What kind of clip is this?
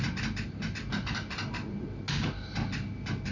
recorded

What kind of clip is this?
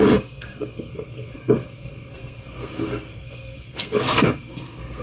remade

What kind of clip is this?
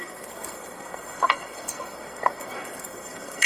remade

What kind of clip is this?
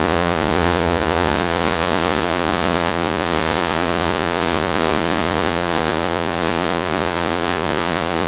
remade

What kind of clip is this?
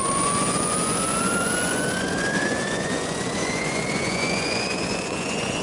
remade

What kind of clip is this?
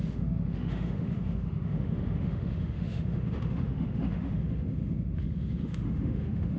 remade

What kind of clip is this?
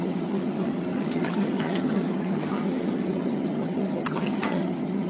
remade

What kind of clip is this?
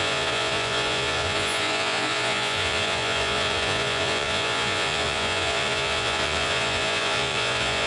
remade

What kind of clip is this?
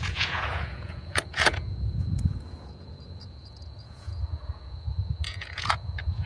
remade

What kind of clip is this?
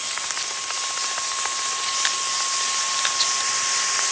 recorded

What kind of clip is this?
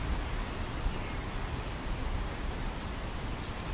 recorded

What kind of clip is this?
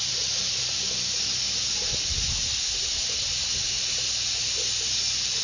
recorded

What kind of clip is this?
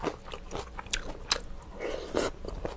recorded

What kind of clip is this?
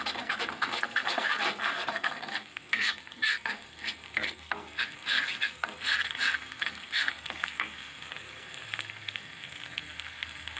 remade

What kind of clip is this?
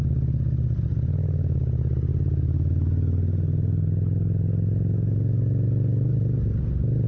recorded